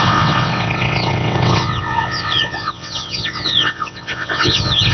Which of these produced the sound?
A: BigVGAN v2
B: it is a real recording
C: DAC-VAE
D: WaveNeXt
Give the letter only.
D